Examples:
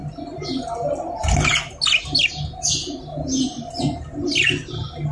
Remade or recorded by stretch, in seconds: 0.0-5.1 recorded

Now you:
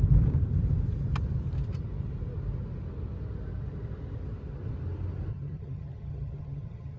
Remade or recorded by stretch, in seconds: 0.0-5.3 recorded; 5.3-7.0 remade

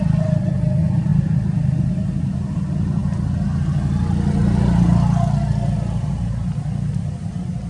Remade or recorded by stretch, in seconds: 0.0-7.7 recorded